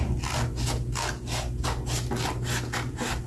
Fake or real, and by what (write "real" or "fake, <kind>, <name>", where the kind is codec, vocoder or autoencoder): real